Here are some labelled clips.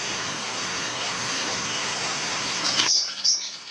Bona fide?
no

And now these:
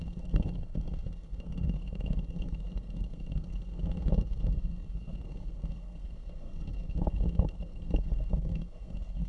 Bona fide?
no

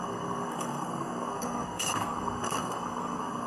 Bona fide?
no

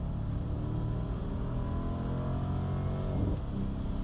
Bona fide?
yes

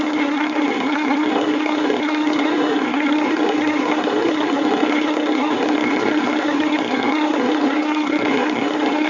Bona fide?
no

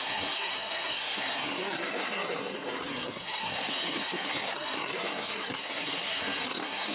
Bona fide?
no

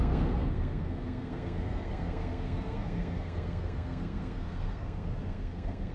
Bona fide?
no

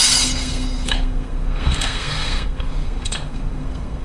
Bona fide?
no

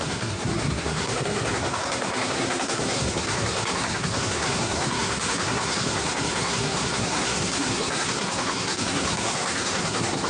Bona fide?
no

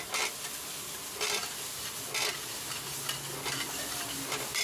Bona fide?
yes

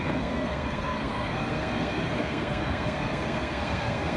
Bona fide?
no